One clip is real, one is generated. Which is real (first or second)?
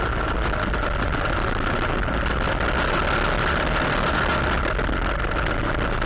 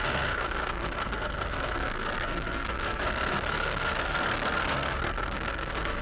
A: first